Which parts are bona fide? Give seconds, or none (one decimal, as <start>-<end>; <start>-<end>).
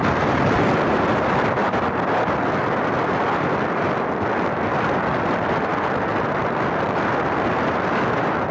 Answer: 0.0-8.5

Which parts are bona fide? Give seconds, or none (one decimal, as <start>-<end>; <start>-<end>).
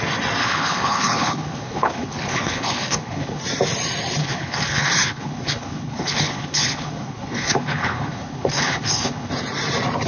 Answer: 0.0-0.4; 3.4-4.2; 9.3-10.1